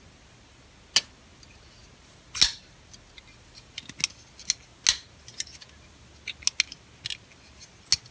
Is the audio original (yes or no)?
yes